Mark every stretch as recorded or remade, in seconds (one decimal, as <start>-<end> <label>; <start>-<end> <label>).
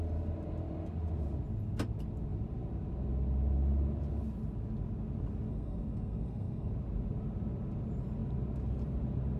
0.0-5.5 recorded; 5.5-6.7 remade; 6.7-9.4 recorded